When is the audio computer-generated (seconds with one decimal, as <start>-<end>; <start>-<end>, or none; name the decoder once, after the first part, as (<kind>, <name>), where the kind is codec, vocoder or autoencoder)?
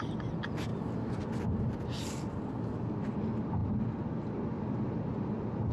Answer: none